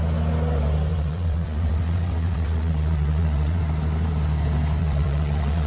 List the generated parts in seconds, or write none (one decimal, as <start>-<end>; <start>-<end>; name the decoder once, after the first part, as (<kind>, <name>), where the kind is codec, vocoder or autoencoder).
0.9-3.6 (vocoder, WaveNeXt); 4.8-5.7